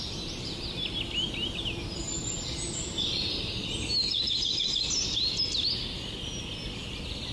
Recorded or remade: recorded